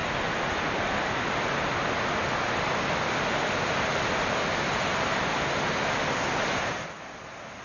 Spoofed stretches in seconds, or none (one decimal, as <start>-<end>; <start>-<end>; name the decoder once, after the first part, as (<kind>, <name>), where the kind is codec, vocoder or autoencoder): none